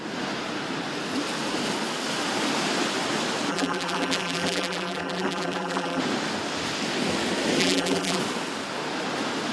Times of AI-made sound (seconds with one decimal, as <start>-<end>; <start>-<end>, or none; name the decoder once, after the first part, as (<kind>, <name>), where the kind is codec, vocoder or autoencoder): 3.5-6.0 (vocoder, BigVGAN v2); 7.6-8.2